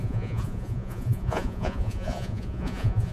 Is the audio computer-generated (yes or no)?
yes